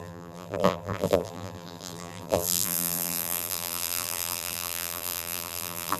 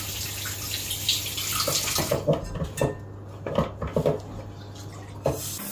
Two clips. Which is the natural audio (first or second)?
second